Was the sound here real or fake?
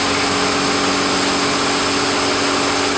real